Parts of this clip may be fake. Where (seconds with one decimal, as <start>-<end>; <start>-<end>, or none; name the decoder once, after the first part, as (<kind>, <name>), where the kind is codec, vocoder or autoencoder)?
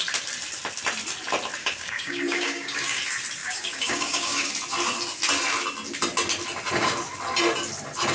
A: 1.6-3.0 (codec, DAC); 3.4-4.5